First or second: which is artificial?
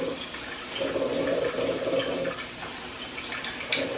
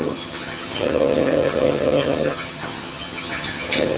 second